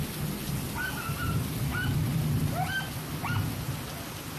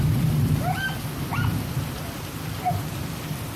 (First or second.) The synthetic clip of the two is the second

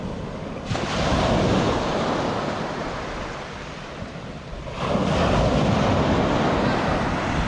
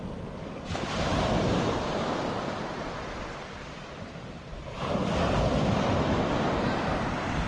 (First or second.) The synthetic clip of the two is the second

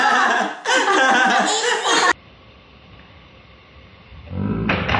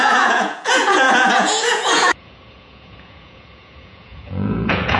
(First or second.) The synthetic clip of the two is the second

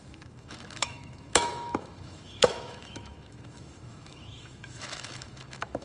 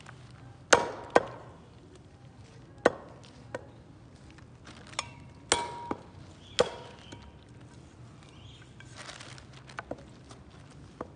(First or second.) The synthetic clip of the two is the first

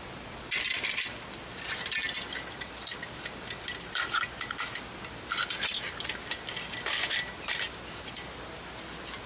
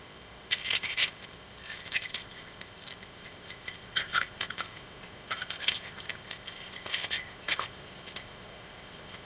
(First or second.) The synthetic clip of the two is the second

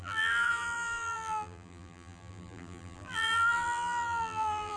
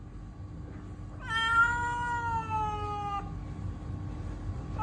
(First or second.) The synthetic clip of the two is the first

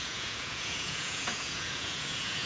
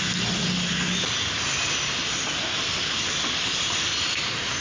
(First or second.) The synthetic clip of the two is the first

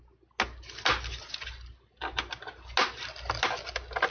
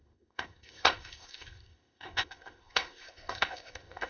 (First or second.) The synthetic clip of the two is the second